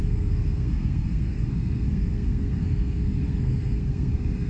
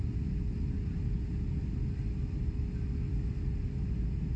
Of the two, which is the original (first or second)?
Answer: second